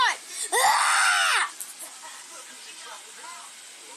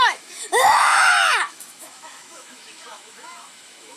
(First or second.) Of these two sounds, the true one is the first